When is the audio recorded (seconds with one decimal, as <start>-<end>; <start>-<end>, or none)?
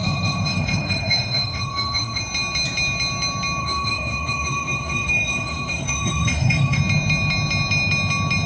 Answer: 2.2-3.6; 6.8-8.5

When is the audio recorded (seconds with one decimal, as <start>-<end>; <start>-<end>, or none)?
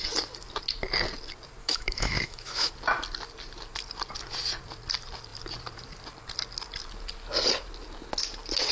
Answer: 0.0-1.6; 2.7-8.7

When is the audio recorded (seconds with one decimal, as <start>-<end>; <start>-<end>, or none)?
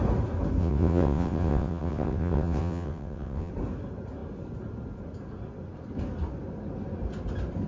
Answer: 0.0-0.6; 3.5-7.7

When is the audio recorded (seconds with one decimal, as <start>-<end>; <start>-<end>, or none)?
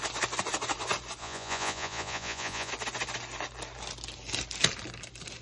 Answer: 0.0-1.2; 2.7-5.4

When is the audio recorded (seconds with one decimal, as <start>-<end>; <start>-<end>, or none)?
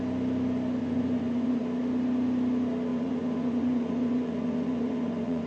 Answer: 0.0-0.8; 1.6-2.9